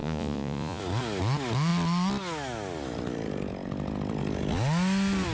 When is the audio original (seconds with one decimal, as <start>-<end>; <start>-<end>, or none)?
0.8-5.3